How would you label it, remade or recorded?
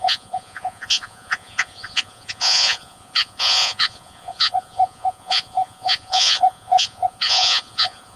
remade